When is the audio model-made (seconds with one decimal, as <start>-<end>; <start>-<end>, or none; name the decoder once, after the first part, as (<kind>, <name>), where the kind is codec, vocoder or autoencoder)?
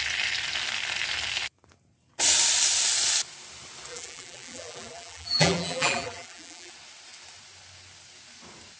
3.9-6.7 (vocoder, BigVGAN v2)